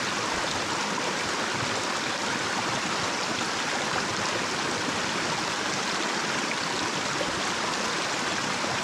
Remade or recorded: recorded